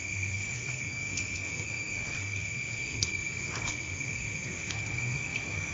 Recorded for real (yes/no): no